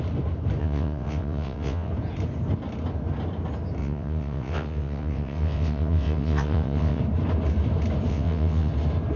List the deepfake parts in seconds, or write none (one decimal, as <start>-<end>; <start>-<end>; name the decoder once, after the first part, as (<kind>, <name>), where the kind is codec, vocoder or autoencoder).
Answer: 0.6-1.9 (vocoder, WaveNeXt); 3.8-7.0; 8.1-8.7